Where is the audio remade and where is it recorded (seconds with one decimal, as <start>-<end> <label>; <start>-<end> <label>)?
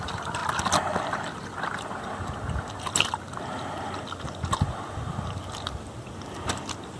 0.0-7.0 recorded